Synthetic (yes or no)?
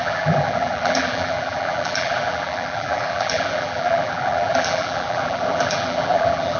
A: yes